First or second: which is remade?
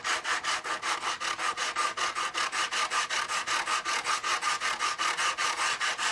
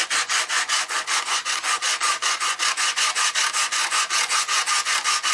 second